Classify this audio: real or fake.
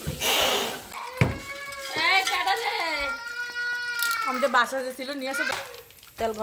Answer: real